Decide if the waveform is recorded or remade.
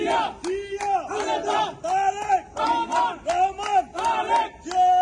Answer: recorded